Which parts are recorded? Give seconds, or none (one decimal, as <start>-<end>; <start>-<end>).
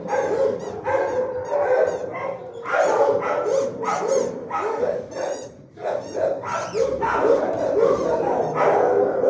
0.0-5.2; 6.0-9.3